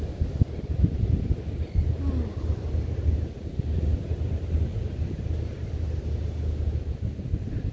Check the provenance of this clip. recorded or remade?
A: recorded